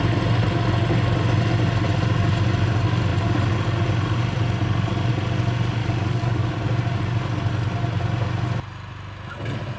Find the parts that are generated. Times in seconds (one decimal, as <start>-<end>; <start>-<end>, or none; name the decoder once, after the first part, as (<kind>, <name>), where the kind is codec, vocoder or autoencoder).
5.8-6.5 (codec, DAC)